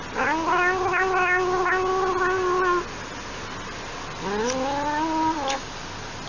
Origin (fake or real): real